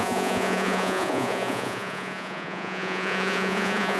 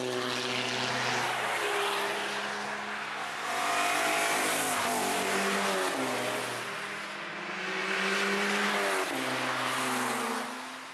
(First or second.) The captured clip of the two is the second